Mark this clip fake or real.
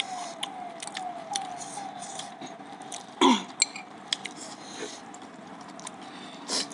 real